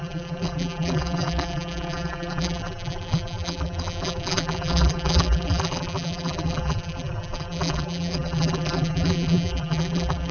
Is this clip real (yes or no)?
no